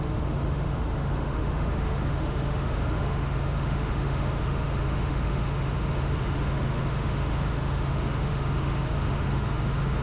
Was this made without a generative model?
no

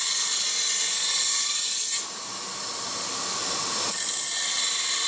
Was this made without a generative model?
yes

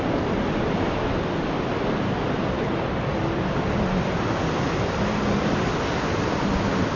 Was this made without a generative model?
yes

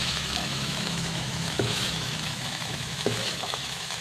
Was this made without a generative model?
no